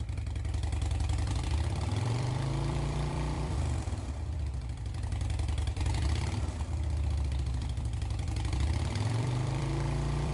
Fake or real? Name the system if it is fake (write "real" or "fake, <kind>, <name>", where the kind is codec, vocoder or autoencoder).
fake, vocoder, BigVGAN v2